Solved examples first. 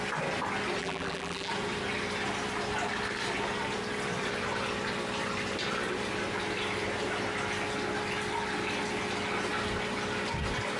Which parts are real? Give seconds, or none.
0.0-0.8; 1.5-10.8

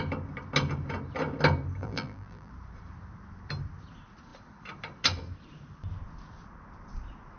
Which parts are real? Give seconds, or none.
0.0-1.8; 2.5-7.4

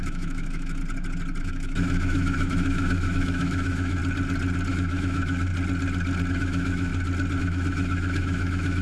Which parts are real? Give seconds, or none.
0.8-1.4; 4.0-4.7; 5.5-6.3; 6.9-7.4

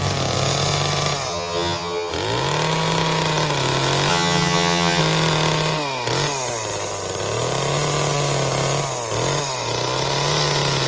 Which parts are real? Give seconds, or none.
0.0-1.3; 2.1-4.1; 5.0-10.9

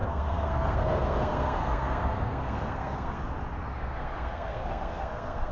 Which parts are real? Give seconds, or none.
3.2-3.7